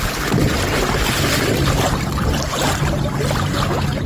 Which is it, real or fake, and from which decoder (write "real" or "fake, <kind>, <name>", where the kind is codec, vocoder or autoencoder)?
real